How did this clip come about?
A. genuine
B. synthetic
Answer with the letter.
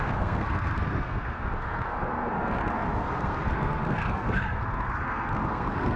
B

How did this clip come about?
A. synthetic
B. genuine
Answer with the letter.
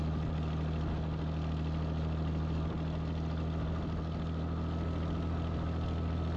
B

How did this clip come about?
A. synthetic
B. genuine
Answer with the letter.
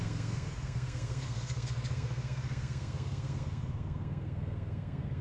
A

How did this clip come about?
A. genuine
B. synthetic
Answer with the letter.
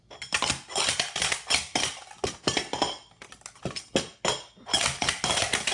A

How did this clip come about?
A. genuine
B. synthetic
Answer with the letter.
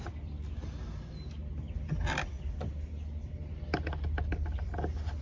A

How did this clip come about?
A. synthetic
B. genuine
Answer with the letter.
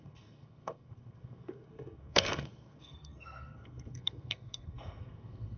A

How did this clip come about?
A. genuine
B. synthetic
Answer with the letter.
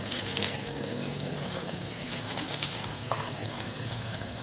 B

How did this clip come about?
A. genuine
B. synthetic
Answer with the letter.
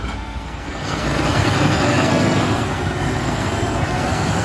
B